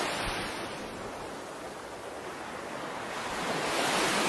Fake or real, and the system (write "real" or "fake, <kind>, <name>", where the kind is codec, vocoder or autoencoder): real